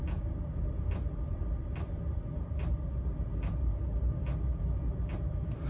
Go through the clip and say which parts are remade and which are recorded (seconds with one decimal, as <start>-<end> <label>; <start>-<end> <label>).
0.0-5.7 recorded